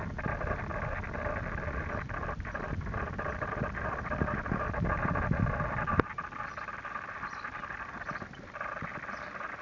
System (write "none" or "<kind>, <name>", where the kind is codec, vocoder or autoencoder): none